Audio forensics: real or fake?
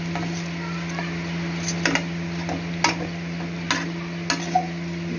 real